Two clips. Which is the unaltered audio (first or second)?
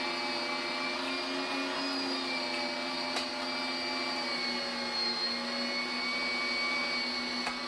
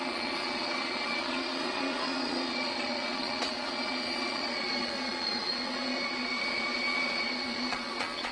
first